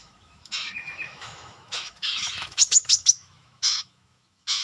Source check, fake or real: fake